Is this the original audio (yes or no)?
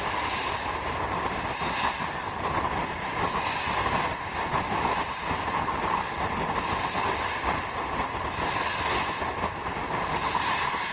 yes